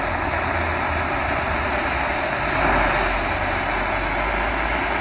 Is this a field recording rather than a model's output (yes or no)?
yes